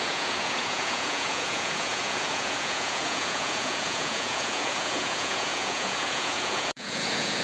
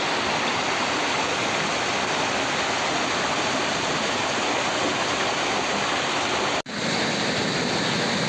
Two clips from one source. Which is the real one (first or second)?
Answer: second